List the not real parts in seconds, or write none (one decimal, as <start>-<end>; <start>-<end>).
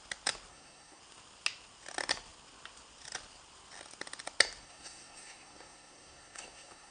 0.5-1.0; 4.6-6.9